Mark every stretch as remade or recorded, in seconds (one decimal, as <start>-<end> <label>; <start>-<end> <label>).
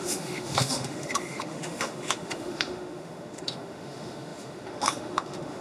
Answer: 0.0-5.6 remade